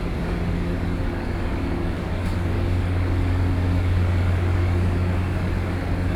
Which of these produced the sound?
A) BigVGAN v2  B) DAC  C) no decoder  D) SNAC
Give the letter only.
B